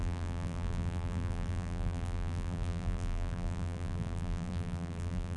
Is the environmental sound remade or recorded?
remade